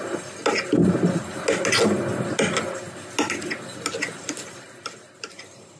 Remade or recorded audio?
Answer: recorded